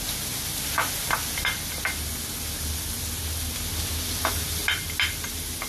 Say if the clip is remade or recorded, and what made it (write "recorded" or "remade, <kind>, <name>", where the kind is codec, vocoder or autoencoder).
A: recorded